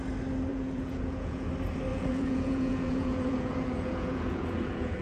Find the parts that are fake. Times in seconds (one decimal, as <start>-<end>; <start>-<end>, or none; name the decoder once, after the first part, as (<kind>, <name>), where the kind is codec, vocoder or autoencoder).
0.5-1.5 (vocoder, Vocos); 1.9-5.0